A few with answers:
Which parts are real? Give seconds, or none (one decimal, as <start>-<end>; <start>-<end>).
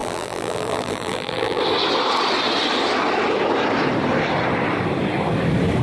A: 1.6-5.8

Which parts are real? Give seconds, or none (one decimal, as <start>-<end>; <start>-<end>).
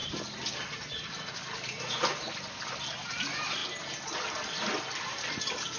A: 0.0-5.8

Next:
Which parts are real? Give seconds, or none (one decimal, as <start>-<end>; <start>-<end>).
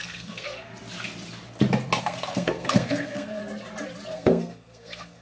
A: 0.7-2.0; 3.4-4.1